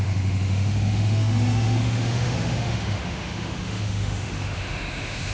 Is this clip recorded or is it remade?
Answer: remade